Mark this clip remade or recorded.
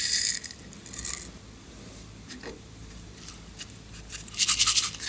recorded